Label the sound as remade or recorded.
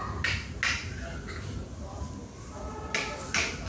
recorded